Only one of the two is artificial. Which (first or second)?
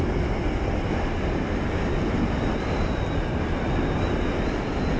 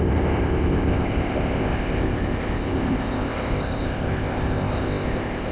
second